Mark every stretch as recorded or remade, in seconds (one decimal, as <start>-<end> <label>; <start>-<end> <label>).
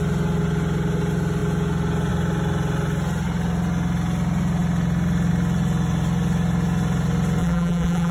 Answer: 0.0-7.4 recorded; 7.4-8.1 remade